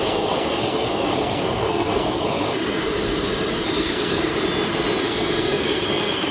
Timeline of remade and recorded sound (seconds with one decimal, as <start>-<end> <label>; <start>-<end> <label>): 0.0-2.9 remade; 2.9-3.5 recorded; 3.5-4.3 remade; 4.3-5.0 recorded; 5.0-6.3 remade